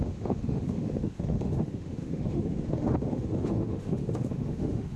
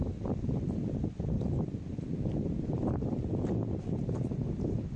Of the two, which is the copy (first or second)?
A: first